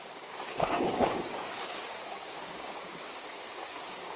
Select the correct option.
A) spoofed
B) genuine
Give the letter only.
A